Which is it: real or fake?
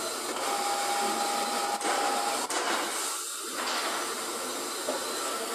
real